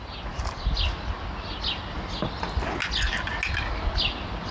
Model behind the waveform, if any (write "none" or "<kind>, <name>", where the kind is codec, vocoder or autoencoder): none